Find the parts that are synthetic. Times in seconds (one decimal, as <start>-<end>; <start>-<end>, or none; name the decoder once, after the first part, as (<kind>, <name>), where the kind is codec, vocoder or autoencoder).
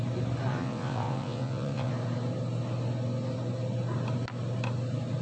0.5-1.9 (vocoder, WaveNeXt)